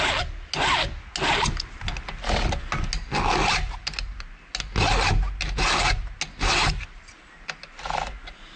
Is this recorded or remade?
recorded